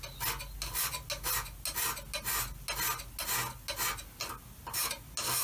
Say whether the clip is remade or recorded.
recorded